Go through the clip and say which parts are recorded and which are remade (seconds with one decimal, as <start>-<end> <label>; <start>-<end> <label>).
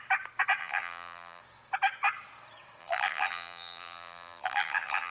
0.0-0.6 recorded; 0.6-1.4 remade; 1.4-2.8 recorded; 2.8-5.1 remade